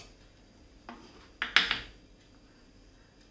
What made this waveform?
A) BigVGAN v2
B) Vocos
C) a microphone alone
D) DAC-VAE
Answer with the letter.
C